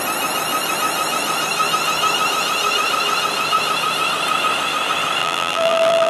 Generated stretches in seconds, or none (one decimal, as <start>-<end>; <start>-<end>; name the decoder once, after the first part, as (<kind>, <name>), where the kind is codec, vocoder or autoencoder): 5.2-6.1 (vocoder, BigVGAN v2)